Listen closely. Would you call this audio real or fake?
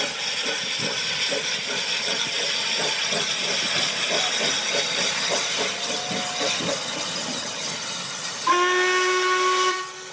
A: real